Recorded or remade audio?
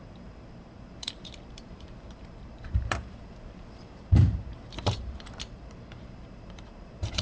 remade